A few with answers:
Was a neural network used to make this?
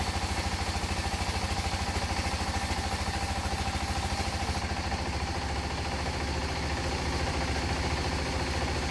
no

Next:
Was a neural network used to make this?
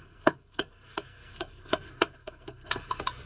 yes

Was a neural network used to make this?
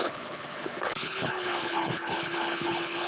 yes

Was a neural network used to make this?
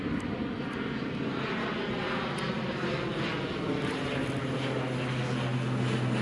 no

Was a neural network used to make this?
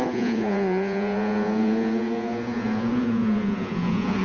yes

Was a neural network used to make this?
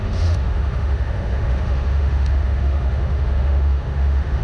yes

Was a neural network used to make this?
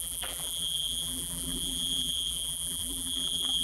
yes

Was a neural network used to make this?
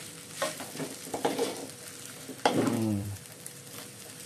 yes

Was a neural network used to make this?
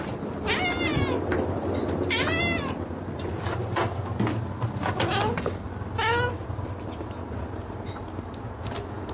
no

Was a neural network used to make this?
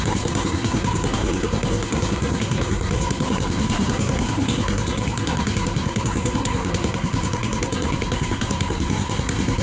yes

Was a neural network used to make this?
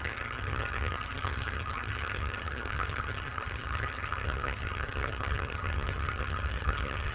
yes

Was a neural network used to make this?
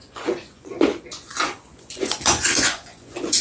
yes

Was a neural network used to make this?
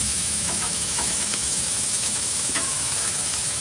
yes